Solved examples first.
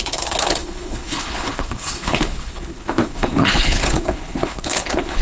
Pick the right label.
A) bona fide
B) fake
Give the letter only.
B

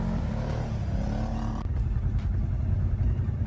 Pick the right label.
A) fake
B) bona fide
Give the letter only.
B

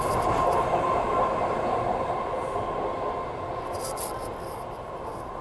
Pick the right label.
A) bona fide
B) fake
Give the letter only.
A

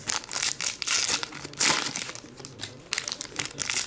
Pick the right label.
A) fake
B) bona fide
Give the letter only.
B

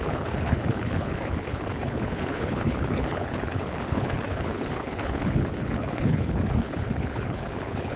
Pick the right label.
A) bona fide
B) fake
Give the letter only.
B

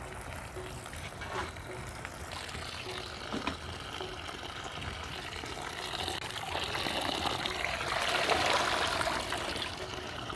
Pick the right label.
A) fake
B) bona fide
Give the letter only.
B